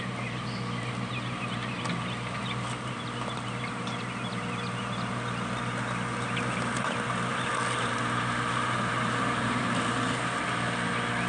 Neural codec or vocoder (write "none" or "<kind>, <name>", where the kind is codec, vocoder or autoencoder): none